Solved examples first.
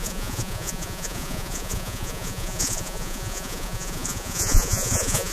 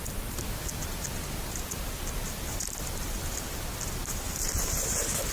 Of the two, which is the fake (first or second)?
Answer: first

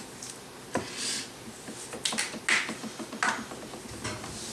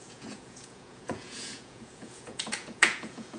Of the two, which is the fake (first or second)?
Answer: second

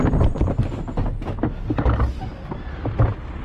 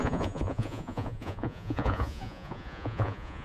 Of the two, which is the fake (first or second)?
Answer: second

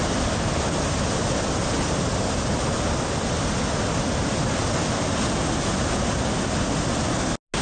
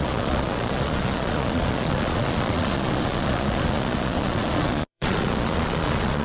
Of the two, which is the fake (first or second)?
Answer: second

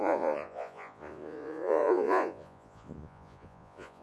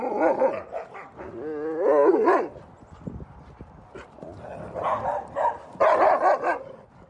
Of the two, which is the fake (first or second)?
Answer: first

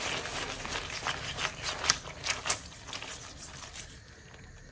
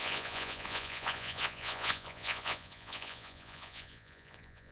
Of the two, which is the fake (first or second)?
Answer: second